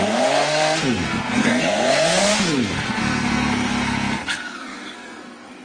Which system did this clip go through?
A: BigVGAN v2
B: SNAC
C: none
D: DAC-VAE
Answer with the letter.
B